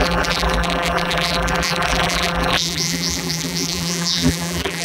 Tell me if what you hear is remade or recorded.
remade